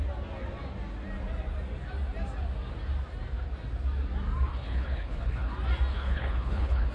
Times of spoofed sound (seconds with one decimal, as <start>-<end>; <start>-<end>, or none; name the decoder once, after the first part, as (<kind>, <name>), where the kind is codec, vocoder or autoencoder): 4.5-5.5 (codec, HILCodec); 5.9-6.9